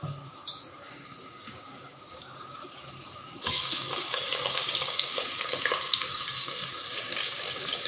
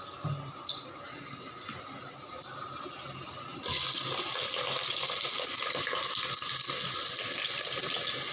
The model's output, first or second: first